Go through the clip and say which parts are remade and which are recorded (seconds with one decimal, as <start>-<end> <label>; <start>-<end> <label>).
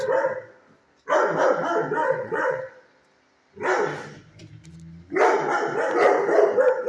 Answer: 0.0-2.0 recorded; 2.0-2.6 remade; 2.6-6.9 recorded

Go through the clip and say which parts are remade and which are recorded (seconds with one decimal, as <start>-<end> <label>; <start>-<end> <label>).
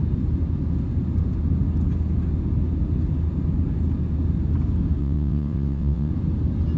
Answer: 0.0-5.0 recorded; 5.0-6.1 remade; 6.1-6.8 recorded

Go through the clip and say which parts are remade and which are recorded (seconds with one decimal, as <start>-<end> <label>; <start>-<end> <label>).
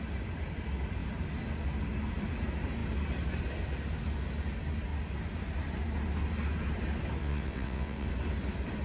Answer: 0.0-7.2 recorded; 7.2-8.1 remade; 8.1-8.8 recorded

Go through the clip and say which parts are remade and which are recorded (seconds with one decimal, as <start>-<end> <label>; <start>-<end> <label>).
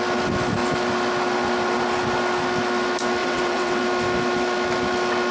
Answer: 0.0-3.2 recorded; 3.2-3.8 remade; 3.8-5.3 recorded